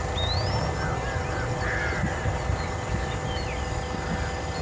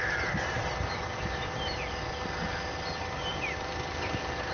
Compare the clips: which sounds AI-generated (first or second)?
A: second